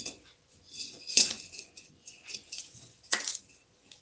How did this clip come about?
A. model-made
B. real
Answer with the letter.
A